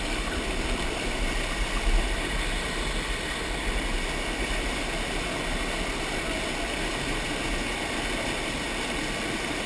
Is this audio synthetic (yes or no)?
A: no